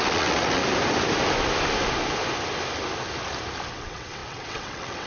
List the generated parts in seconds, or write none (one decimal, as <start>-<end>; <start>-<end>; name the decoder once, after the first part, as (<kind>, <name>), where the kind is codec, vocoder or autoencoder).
0.0-0.6 (vocoder, WaveNeXt); 3.7-5.1